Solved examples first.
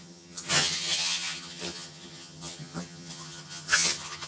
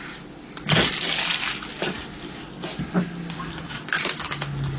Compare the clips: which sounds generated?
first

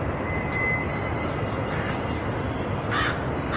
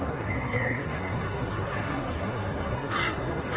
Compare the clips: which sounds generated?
second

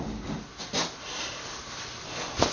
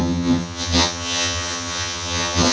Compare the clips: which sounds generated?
second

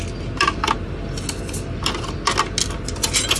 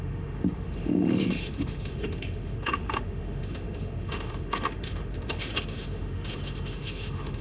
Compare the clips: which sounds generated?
second